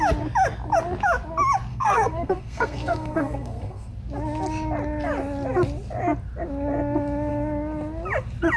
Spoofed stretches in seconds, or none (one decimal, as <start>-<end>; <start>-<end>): 1.7-3.9